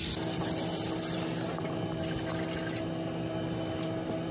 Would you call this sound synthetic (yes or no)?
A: no